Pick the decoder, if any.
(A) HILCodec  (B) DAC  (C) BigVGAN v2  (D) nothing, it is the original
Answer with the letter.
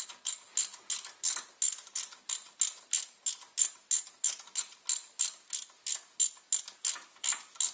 D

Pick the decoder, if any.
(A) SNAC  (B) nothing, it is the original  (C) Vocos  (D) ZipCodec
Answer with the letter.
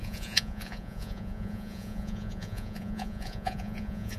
C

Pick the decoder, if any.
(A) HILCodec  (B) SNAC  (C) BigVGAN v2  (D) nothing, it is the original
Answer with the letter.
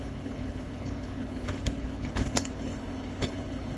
A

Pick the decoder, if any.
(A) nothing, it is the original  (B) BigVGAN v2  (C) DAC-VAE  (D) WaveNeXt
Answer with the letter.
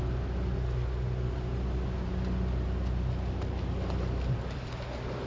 A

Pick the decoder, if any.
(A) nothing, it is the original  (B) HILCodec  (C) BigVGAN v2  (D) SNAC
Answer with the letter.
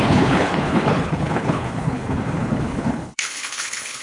B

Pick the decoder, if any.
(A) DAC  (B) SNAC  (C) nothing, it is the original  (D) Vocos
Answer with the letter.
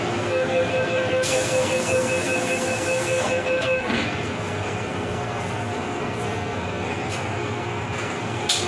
B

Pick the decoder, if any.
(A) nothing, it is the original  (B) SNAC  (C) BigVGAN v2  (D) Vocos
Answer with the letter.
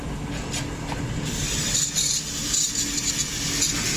A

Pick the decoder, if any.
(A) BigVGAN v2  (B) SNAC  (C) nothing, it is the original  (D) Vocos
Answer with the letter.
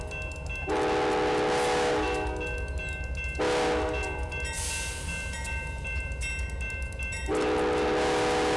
C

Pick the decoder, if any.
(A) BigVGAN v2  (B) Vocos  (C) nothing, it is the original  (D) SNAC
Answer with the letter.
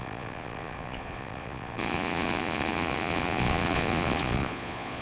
B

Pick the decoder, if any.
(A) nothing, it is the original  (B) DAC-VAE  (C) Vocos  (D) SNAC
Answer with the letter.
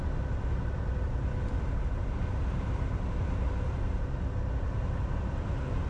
A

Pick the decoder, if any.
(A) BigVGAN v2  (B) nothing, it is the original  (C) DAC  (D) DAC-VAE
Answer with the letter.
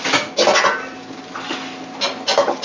B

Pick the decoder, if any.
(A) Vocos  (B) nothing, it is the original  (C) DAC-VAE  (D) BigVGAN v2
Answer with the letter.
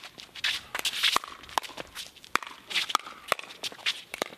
B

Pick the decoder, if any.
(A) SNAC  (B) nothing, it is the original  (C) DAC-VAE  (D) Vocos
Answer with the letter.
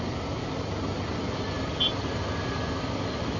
B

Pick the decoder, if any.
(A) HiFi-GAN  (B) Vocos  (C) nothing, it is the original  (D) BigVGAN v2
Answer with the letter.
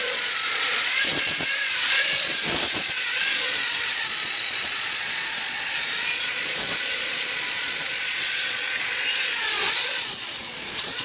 B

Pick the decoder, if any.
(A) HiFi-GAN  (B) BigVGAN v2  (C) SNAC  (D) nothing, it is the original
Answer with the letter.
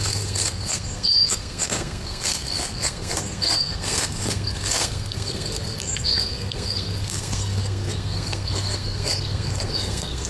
C